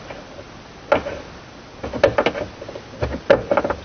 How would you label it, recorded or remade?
recorded